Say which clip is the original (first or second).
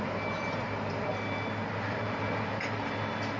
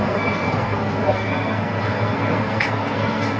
first